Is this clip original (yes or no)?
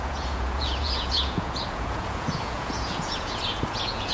no